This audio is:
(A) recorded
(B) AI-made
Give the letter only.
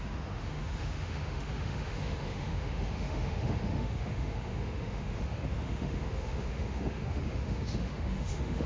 B